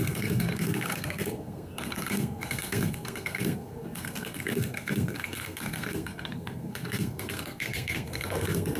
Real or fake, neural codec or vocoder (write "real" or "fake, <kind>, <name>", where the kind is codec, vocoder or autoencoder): fake, codec, SNAC